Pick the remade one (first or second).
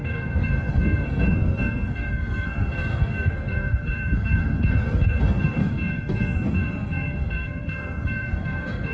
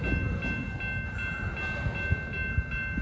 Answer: first